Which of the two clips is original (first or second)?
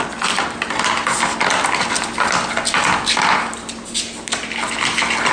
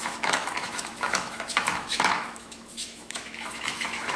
first